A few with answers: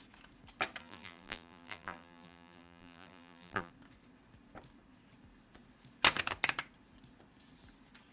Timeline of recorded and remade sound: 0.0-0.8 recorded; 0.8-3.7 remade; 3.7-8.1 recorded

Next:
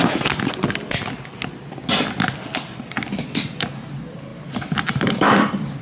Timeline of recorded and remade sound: 0.0-4.3 recorded; 4.3-5.8 remade

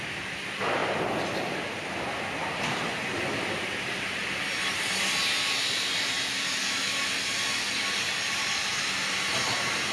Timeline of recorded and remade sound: 0.0-9.9 recorded

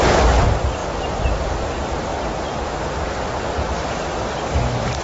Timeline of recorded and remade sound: 0.0-5.0 recorded

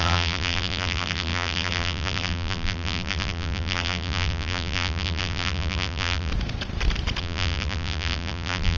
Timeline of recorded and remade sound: 0.0-6.3 remade; 6.3-7.2 recorded; 7.2-8.8 remade